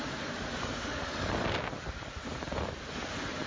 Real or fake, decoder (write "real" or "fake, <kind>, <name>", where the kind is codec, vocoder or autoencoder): real